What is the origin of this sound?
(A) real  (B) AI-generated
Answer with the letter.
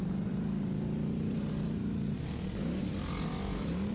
B